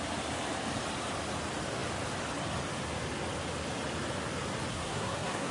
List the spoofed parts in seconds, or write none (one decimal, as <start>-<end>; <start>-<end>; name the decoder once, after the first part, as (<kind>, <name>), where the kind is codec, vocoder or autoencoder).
4.7-5.5 (codec, SNAC)